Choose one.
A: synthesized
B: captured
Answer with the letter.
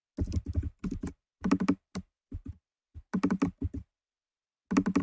B